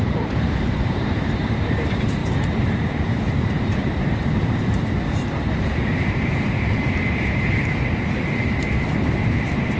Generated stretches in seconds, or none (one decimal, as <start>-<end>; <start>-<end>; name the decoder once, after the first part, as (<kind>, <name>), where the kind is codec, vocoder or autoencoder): 0.0-9.8 (vocoder, BigVGAN v2)